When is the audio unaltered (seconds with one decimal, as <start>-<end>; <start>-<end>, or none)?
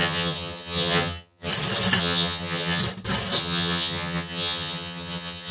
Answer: 1.5-2.0; 2.8-3.4